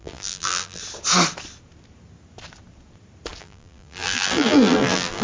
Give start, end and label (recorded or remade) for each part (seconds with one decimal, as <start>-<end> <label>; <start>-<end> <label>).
0.0-0.8 remade; 0.8-3.4 recorded; 3.4-5.2 remade